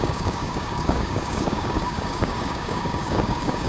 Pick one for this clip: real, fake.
fake